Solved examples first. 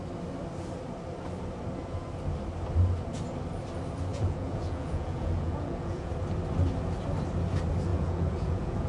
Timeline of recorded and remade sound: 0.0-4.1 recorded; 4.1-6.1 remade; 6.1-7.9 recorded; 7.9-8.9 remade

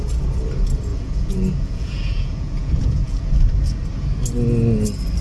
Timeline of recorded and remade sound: 0.0-0.9 recorded; 0.9-3.3 remade; 3.3-5.2 recorded

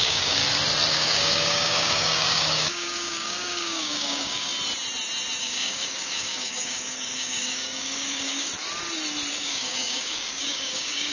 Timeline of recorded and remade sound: 0.0-0.4 remade; 0.4-0.9 recorded; 0.9-4.5 remade; 4.5-5.4 recorded; 5.4-8.5 remade; 8.5-9.3 recorded; 9.3-11.1 remade

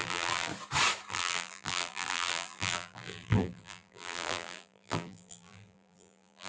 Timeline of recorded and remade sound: 0.0-0.5 remade; 0.5-1.1 recorded; 1.1-6.5 remade

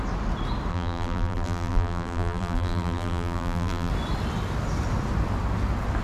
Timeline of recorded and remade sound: 0.0-0.7 recorded; 0.7-3.9 remade; 3.9-6.0 recorded

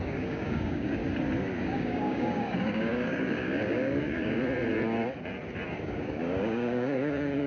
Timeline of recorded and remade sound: 0.0-1.0 remade; 1.0-1.6 recorded; 1.6-4.4 remade; 4.4-5.8 recorded; 5.8-7.5 remade